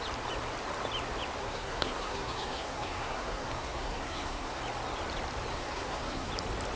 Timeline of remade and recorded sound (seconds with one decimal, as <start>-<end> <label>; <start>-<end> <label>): 0.0-1.4 recorded; 1.4-4.6 remade; 4.6-5.5 recorded; 5.5-6.3 remade; 6.3-6.8 recorded